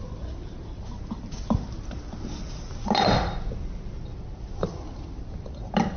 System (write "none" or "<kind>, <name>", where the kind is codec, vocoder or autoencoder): none